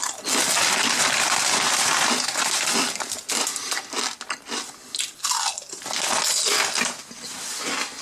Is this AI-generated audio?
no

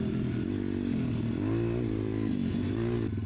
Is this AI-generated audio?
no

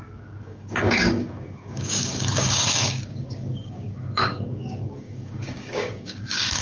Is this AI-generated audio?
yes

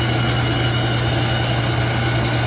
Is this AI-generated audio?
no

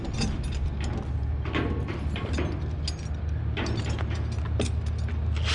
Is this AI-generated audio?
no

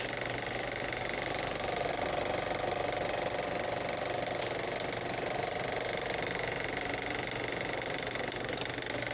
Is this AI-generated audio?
no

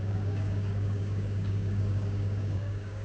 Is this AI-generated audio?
yes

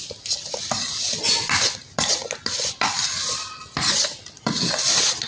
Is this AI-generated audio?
no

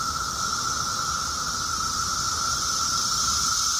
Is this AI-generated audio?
no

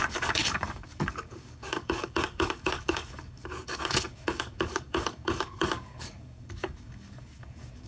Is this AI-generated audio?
yes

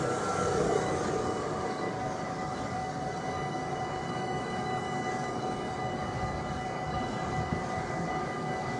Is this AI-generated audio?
yes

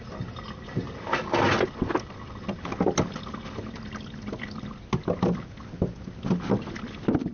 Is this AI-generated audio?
no